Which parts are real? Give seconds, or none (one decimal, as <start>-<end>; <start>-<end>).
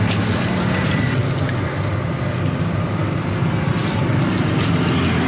0.0-5.3